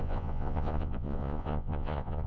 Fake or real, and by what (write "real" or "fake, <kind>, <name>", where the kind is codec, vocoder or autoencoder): fake, vocoder, Vocos